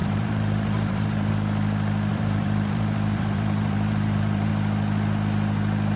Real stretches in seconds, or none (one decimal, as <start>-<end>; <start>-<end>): 1.3-2.1; 4.5-6.0